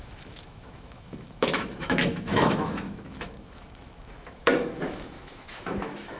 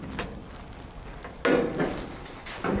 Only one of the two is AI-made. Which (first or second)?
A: first